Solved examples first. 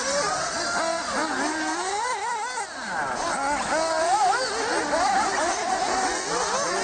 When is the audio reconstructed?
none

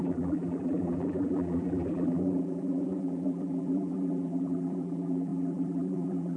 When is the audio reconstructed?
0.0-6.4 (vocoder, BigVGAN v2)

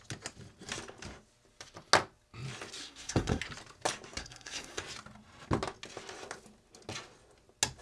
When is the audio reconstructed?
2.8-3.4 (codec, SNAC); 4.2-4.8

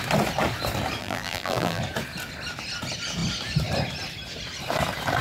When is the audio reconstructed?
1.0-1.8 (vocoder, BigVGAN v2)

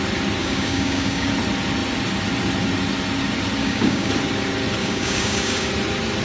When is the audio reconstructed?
0.4-1.3 (codec, DAC); 3.6-4.1; 4.8-5.7